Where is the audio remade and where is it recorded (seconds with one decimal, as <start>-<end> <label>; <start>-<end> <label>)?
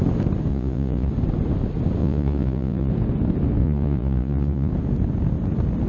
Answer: 0.0-0.5 recorded; 0.5-1.1 remade; 1.1-2.0 recorded; 2.0-2.9 remade; 2.9-3.6 recorded; 3.6-4.7 remade; 4.7-5.9 recorded